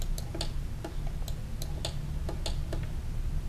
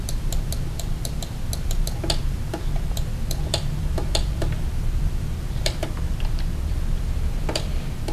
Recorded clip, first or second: first